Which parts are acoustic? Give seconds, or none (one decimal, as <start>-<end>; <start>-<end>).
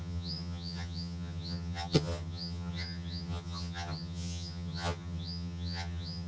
none